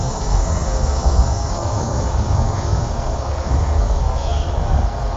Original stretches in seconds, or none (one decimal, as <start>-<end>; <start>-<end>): none